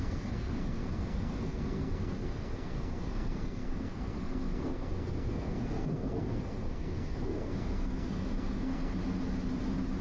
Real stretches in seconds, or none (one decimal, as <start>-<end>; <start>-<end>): 9.0-10.0

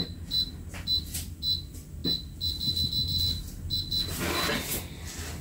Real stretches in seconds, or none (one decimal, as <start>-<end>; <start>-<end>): 0.0-5.4

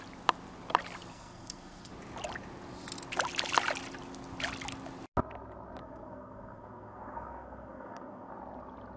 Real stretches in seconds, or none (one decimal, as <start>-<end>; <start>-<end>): 0.0-1.1; 1.9-5.8; 8.3-9.0

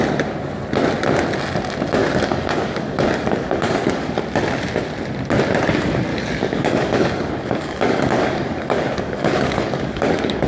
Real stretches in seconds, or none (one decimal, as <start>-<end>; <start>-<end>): 0.0-2.0; 4.1-6.1

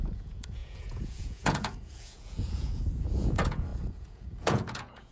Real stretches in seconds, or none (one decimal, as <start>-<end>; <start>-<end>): none

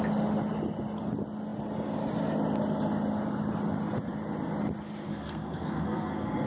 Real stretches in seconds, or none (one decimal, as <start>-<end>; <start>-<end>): 0.0-5.1